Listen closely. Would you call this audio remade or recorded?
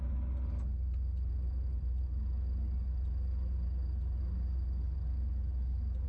recorded